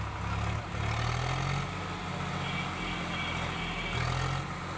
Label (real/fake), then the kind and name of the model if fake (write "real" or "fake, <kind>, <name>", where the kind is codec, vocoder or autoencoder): real